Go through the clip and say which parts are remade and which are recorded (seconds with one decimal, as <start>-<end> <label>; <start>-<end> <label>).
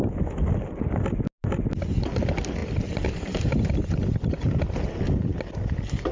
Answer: 0.0-6.1 recorded